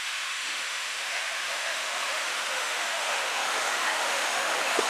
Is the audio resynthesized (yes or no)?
yes